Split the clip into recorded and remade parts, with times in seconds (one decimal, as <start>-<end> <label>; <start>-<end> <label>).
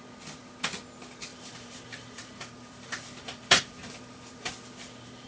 0.0-1.3 recorded; 1.3-4.5 remade; 4.5-5.3 recorded